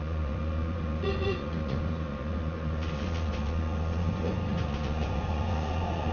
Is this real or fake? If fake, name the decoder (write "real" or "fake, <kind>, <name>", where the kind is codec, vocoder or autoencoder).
fake, vocoder, Vocos